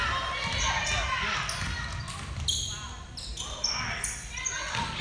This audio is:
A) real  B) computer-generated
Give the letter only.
A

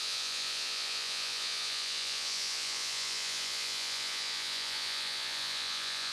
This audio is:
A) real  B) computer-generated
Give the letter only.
B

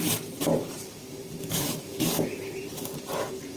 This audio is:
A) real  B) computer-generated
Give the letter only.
B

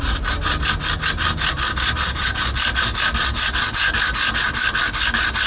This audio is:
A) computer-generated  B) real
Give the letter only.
B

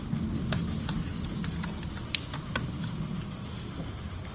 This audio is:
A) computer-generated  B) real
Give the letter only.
B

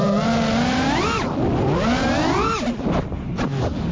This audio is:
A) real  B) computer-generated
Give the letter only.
A